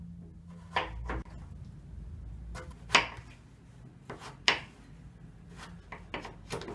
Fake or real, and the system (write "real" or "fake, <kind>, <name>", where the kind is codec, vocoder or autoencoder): real